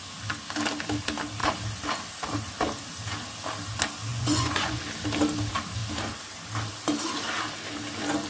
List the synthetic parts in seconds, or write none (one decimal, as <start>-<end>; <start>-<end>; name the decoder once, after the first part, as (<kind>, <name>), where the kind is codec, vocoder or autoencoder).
4.1-4.8 (vocoder, Vocos)